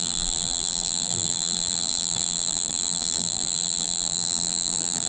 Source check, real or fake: fake